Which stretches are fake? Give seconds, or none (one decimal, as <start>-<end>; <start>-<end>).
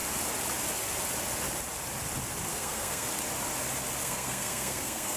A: 2.5-3.1; 4.0-5.2